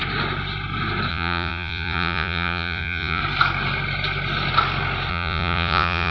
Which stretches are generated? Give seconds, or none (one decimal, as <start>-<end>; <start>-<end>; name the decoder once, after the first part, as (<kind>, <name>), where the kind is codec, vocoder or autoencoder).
1.1-3.2 (vocoder, Vocos); 5.1-6.1